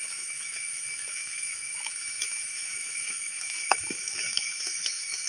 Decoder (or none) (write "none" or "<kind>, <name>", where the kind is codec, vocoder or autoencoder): autoencoder, DAC-VAE